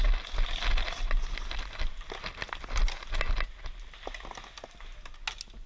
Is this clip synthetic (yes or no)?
no